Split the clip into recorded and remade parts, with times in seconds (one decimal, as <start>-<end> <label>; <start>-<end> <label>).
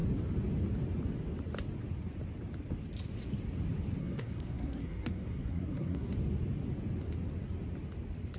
0.0-4.0 recorded; 4.0-6.1 remade; 6.1-8.4 recorded